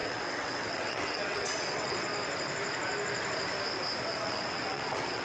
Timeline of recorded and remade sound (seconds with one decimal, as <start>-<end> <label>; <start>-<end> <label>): 0.0-2.1 remade; 2.1-4.1 recorded; 4.1-5.2 remade